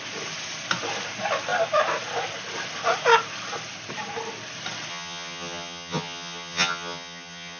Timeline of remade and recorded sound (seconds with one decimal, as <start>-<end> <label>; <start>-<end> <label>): 0.0-4.9 recorded; 4.9-7.6 remade